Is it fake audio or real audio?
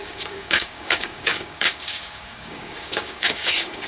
fake